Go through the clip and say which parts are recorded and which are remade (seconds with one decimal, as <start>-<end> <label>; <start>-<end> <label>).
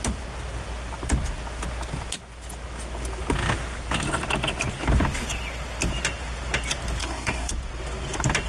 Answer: 0.0-7.0 recorded; 7.0-7.5 remade; 7.5-8.5 recorded